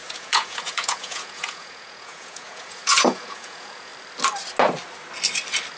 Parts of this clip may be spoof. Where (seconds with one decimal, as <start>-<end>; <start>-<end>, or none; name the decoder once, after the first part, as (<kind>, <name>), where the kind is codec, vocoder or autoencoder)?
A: 0.0-3.9 (vocoder, Vocos)